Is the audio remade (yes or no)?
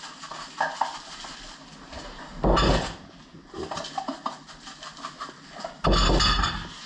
no